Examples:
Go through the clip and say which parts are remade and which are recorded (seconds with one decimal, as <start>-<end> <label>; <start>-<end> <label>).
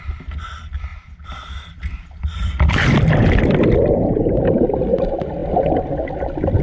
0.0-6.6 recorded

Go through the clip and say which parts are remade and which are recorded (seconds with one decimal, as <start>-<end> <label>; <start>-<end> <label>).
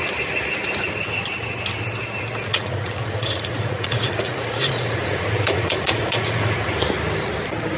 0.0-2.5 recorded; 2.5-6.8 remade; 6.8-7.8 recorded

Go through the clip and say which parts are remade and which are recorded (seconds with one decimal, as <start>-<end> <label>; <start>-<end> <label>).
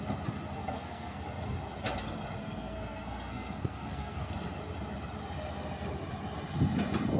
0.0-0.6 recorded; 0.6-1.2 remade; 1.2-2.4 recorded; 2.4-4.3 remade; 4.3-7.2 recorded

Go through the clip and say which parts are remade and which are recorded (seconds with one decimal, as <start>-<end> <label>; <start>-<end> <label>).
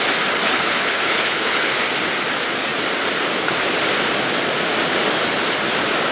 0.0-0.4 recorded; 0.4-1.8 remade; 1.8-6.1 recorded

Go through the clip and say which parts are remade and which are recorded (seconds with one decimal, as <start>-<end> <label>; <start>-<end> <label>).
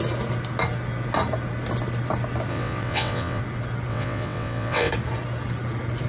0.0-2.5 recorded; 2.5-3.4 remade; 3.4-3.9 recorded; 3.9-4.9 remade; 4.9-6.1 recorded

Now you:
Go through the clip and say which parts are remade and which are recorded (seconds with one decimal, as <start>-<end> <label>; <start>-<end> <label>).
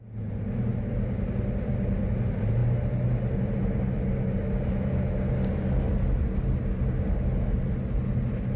0.0-8.6 recorded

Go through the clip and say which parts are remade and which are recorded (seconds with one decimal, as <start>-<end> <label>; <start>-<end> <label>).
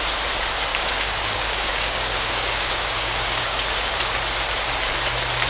0.0-0.7 recorded; 0.7-4.0 remade; 4.0-5.5 recorded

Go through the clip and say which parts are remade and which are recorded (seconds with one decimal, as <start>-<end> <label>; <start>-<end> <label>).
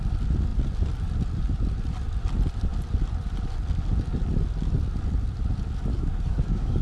0.0-5.9 recorded; 5.9-6.8 remade